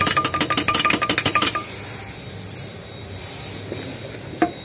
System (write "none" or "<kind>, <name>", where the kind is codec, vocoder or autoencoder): vocoder, BigVGAN v2